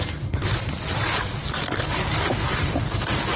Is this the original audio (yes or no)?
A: yes